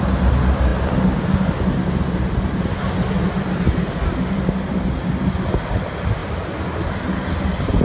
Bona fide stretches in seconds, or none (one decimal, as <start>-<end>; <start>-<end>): 0.0-7.8